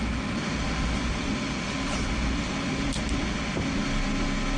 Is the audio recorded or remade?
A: recorded